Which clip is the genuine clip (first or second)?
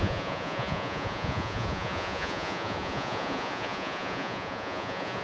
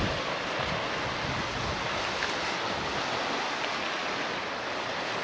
second